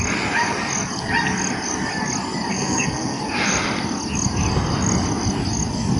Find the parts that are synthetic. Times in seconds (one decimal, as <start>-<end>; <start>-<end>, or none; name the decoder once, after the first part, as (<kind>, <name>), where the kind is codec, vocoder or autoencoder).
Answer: 2.5-3.2 (codec, SNAC)